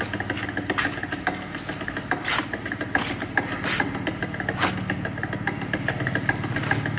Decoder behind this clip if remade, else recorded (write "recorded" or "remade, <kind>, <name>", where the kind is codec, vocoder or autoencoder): recorded